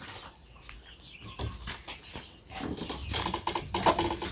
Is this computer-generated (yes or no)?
no